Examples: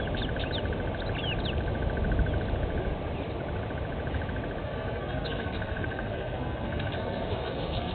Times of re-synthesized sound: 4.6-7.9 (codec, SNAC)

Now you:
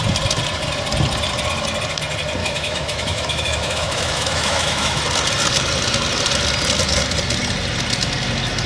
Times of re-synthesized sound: 2.4-5.0 (autoencoder, DAC-VAE)